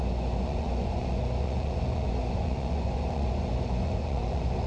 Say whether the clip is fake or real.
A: fake